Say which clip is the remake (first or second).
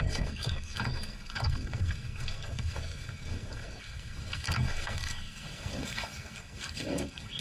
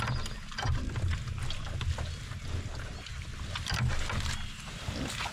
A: first